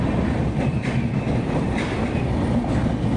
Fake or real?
real